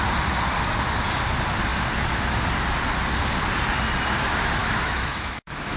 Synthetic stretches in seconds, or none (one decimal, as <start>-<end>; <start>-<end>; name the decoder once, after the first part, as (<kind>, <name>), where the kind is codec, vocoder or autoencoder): 4.6-5.8 (autoencoder, DAC-VAE)